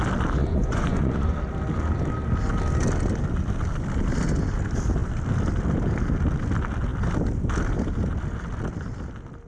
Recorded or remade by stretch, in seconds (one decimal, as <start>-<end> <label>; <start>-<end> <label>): 0.0-0.4 recorded; 0.4-1.4 remade; 1.4-9.5 recorded